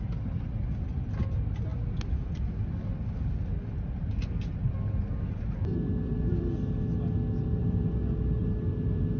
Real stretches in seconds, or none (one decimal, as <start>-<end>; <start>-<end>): 0.0-9.2